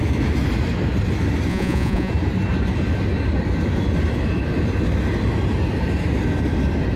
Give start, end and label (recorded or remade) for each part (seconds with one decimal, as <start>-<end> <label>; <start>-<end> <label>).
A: 0.0-1.5 recorded; 1.5-2.1 remade; 2.1-7.0 recorded